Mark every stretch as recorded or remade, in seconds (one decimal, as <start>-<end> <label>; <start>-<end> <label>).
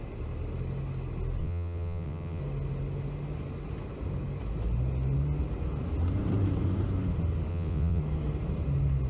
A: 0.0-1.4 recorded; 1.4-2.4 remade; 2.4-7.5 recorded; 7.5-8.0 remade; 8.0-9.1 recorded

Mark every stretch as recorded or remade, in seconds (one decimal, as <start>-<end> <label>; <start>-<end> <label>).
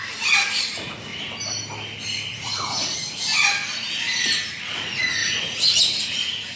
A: 0.0-1.1 remade; 1.1-2.3 recorded; 2.3-3.3 remade; 3.3-4.8 recorded; 4.8-6.6 remade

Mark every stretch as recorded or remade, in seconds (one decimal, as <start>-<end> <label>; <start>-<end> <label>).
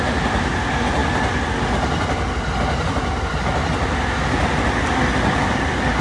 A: 0.0-6.0 recorded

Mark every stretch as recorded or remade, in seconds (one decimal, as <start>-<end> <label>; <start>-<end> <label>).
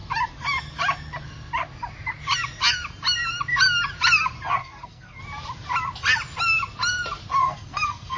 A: 0.0-4.6 recorded; 4.6-5.2 remade; 5.2-7.4 recorded; 7.4-8.2 remade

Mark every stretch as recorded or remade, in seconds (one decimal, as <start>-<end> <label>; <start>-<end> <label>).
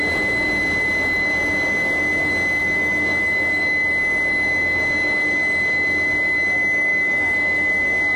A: 0.0-2.6 recorded; 2.6-3.6 remade; 3.6-6.9 recorded; 6.9-7.7 remade; 7.7-8.2 recorded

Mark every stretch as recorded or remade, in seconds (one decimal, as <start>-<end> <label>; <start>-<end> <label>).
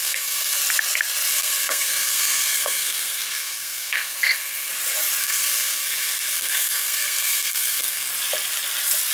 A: 0.0-0.6 remade; 0.6-1.3 recorded; 1.3-4.7 remade; 4.7-5.2 recorded; 5.2-8.1 remade; 8.1-9.1 recorded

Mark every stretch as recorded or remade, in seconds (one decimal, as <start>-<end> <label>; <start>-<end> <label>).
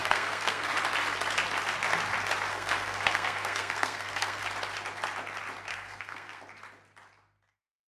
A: 0.0-0.7 remade; 0.7-2.5 recorded; 2.5-4.4 remade; 4.4-5.7 recorded; 5.7-6.4 remade; 6.4-7.9 recorded